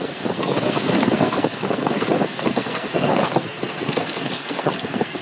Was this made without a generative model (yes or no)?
no